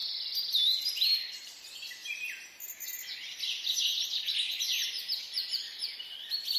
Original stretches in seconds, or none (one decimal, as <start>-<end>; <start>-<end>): 0.0-0.8; 2.0-4.5